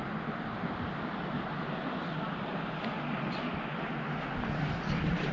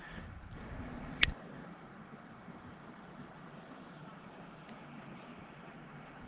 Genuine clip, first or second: first